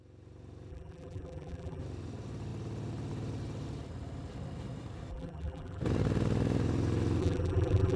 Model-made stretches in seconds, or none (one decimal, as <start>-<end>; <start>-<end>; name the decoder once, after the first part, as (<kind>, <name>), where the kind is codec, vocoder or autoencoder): 0.7-1.8 (vocoder, BigVGAN v2); 5.1-5.8; 7.2-8.0